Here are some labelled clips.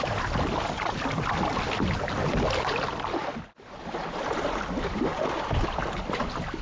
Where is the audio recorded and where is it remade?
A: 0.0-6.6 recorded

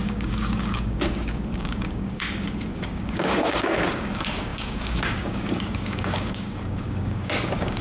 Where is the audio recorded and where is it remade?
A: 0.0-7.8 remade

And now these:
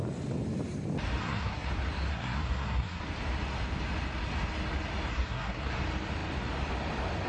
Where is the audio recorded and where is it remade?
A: 0.0-1.2 recorded; 1.2-1.7 remade; 1.7-2.1 recorded; 2.1-3.0 remade; 3.0-5.1 recorded; 5.1-5.7 remade; 5.7-7.3 recorded

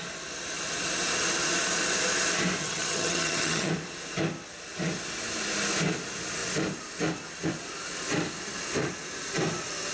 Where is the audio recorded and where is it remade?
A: 0.0-2.6 recorded; 2.6-3.7 remade; 3.7-9.9 recorded